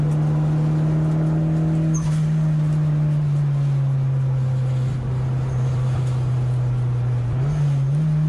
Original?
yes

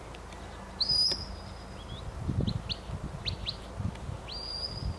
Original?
yes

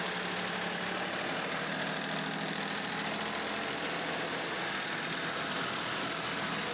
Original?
yes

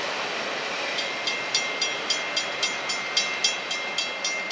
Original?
yes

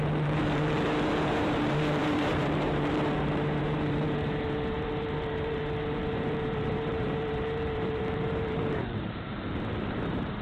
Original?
no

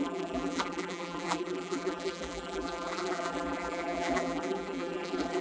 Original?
no